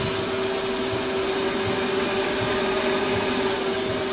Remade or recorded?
recorded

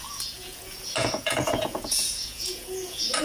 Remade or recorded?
remade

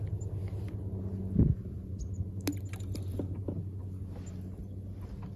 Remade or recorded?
recorded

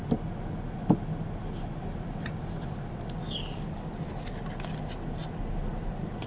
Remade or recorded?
recorded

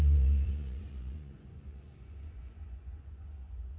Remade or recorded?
remade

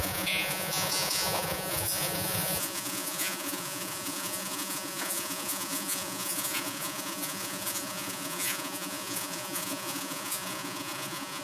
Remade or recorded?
remade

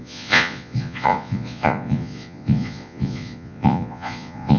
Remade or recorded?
remade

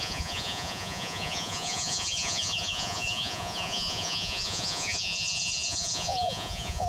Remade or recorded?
remade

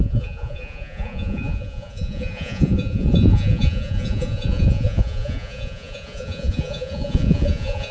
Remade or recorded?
remade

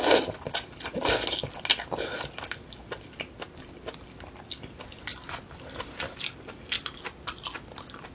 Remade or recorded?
recorded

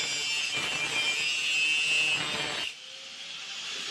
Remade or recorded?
recorded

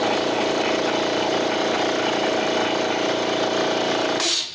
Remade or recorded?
recorded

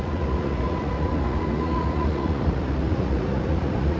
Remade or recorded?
remade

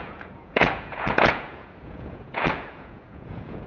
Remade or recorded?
remade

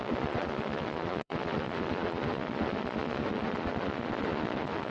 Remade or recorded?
remade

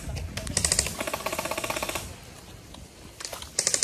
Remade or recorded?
recorded